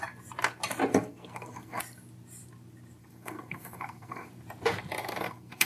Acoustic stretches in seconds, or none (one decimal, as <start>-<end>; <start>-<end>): 0.0-0.9; 1.8-3.0; 4.3-5.0